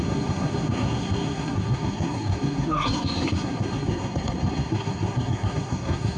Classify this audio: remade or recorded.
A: remade